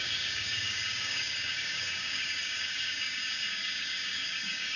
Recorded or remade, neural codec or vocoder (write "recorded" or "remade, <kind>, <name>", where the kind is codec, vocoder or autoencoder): remade, codec, DAC